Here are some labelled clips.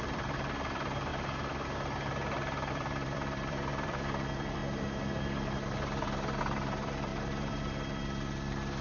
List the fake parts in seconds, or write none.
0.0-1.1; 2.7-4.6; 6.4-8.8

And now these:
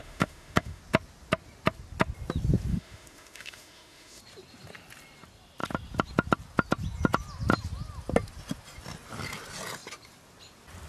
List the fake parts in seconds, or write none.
0.0-0.8; 2.7-4.2

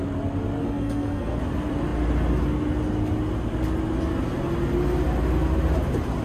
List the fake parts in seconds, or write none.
0.6-1.4

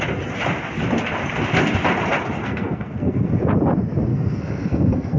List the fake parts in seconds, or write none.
2.4-3.3; 4.1-5.2

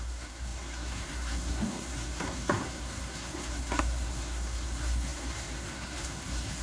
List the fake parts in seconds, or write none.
0.0-6.6

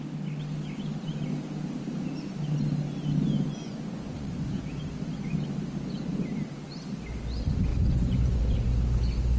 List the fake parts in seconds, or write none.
3.6-4.6; 7.7-8.4

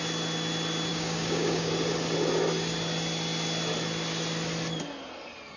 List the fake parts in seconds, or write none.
0.9-1.7

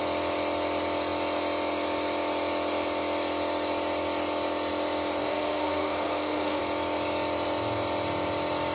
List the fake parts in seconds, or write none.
5.2-6.6